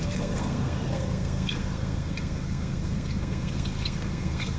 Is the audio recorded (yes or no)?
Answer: no